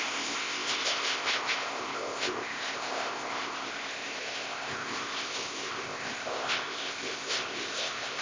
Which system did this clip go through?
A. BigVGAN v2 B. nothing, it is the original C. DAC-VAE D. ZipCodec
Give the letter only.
D